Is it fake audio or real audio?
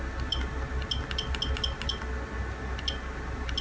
real